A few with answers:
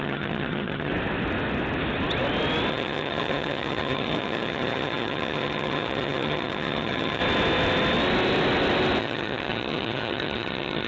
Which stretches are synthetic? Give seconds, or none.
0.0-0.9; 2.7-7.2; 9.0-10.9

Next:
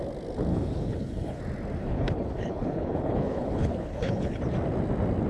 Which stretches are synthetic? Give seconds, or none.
0.5-1.4; 1.8-4.4

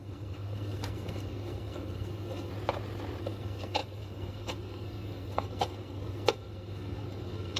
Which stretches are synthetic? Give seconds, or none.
0.0-2.5; 3.2-7.6

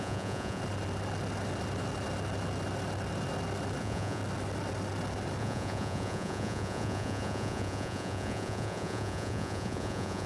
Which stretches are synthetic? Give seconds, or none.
0.0-0.6; 3.8-4.2; 5.4-10.3